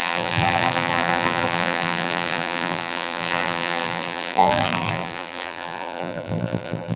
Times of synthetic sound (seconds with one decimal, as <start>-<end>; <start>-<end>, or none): 0.0-7.0